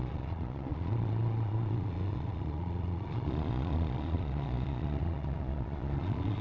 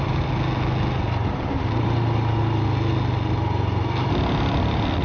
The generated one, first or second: first